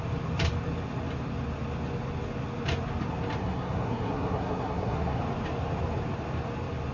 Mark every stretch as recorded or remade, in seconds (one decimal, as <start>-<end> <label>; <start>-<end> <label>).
0.0-3.4 recorded; 3.4-5.2 remade; 5.2-6.9 recorded